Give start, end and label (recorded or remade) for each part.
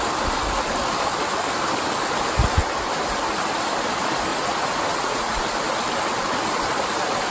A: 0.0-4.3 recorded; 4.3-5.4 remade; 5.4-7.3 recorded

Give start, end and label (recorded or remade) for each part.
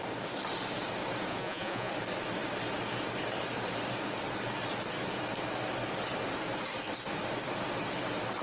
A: 0.0-1.3 recorded; 1.3-1.9 remade; 1.9-8.4 recorded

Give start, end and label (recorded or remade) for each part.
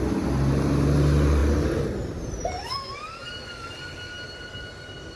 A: 0.0-5.2 recorded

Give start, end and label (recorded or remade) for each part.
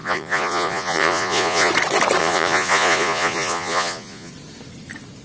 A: 0.0-1.7 remade; 1.7-2.2 recorded; 2.2-4.3 remade; 4.3-5.2 recorded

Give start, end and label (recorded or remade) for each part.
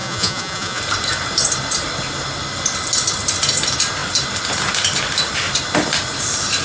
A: 0.0-0.8 remade; 0.8-6.6 recorded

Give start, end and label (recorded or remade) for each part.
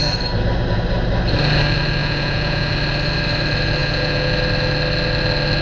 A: 0.0-2.0 recorded; 2.0-2.7 remade; 2.7-3.8 recorded; 3.8-4.3 remade; 4.3-5.6 recorded